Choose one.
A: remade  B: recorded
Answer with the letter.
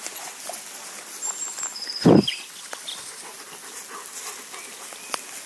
B